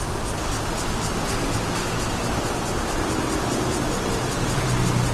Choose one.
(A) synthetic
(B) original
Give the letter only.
B